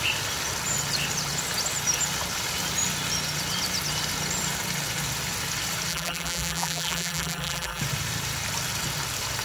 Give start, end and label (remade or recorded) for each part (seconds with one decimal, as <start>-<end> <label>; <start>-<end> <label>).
0.0-5.9 recorded; 5.9-7.8 remade; 7.8-9.4 recorded